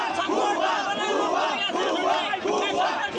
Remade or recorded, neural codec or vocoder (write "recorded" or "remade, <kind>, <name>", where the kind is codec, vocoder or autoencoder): recorded